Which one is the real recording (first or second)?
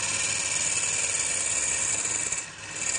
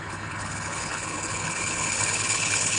first